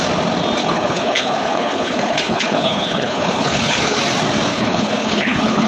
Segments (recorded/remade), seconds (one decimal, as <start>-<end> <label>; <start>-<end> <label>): 0.0-0.6 recorded; 0.6-4.0 remade; 4.0-4.5 recorded; 4.5-5.7 remade

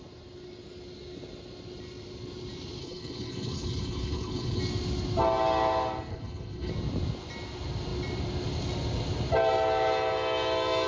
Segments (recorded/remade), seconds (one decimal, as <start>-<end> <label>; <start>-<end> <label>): 0.0-2.8 recorded; 2.8-4.6 remade; 4.6-6.1 recorded; 6.1-6.7 remade; 6.7-10.9 recorded